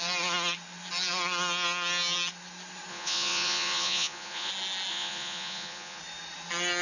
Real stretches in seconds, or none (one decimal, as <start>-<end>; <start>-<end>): 0.0-2.9; 4.5-4.9; 6.0-6.8